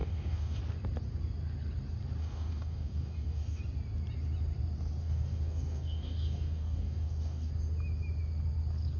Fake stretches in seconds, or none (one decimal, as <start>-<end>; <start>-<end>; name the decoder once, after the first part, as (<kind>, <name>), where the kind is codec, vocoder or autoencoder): 0.0-0.6 (codec, DAC); 2.2-3.6; 5.0-7.5